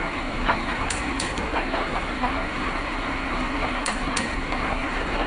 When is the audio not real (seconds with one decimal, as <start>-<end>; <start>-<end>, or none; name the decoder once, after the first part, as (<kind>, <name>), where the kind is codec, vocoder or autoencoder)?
0.0-5.3 (codec, SNAC)